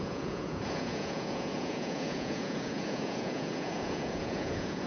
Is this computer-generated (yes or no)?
yes